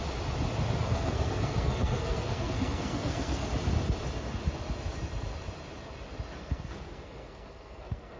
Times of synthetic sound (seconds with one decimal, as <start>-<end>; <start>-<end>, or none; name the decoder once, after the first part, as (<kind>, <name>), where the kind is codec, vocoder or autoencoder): 0.8-3.5 (codec, SNAC); 6.4-8.2